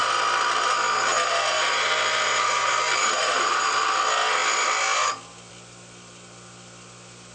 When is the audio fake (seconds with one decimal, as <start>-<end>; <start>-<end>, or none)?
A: 1.1-3.6